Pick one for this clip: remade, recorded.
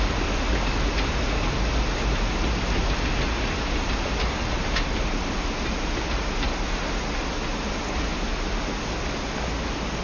recorded